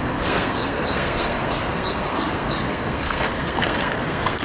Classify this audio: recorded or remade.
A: remade